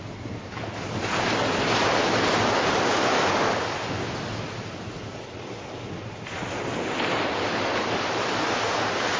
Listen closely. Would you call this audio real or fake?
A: real